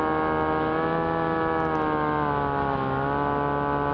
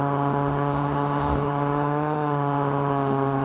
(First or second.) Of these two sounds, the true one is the first